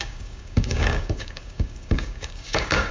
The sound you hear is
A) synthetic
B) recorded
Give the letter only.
A